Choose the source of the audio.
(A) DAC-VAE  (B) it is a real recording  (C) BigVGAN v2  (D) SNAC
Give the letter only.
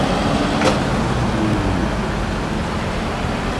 B